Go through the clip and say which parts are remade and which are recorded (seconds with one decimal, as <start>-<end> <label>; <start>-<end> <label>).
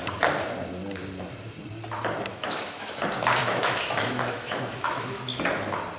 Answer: 0.0-2.3 recorded; 2.3-3.0 remade; 3.0-3.4 recorded; 3.4-5.4 remade; 5.4-6.0 recorded